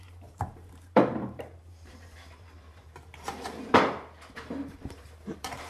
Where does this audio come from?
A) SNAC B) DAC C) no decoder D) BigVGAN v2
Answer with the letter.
D